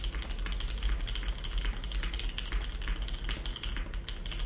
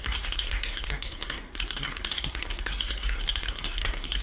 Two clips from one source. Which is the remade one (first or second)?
second